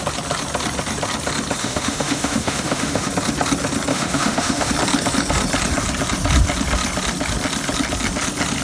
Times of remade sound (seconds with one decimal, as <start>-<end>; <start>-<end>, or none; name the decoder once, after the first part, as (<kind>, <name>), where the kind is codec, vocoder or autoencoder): 1.6-3.1 (autoencoder, DAC-VAE); 3.9-4.7